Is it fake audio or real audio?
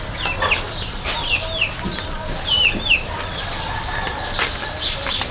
real